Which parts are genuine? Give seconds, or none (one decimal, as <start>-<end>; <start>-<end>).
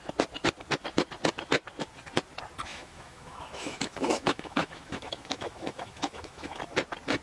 0.0-2.7; 6.6-7.2